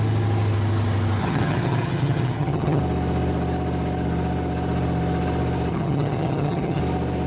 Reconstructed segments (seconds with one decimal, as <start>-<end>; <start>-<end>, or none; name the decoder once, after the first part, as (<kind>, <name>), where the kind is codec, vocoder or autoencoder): 1.2-2.8 (vocoder, HiFi-GAN); 5.7-6.8